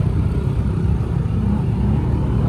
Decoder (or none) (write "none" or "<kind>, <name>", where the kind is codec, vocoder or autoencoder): none